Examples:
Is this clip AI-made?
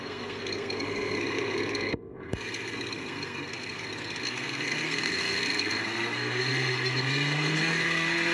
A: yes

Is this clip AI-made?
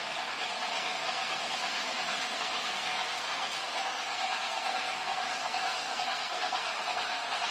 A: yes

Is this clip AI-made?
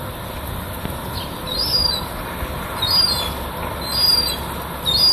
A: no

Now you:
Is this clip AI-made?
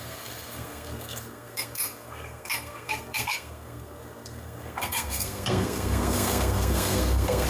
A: yes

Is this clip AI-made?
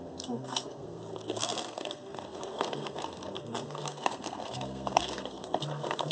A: yes